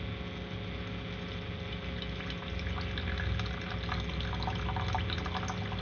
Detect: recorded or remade recorded